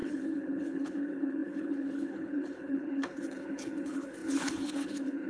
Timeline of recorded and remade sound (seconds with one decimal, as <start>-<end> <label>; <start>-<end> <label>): 0.0-5.3 remade